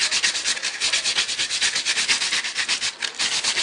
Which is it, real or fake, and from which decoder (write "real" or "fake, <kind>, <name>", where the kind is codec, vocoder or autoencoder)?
real